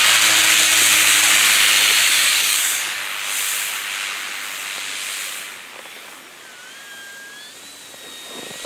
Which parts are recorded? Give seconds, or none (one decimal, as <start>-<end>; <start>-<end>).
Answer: 0.0-2.0; 3.0-8.7